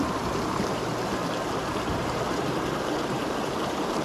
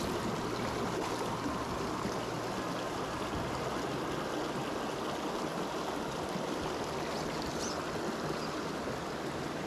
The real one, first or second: second